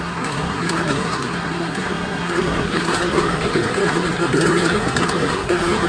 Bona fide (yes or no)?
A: no